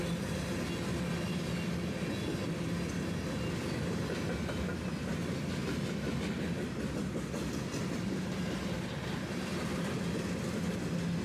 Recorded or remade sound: recorded